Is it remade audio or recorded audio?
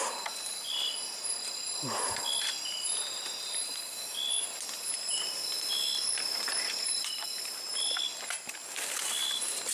recorded